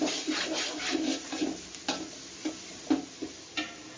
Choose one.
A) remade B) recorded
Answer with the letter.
B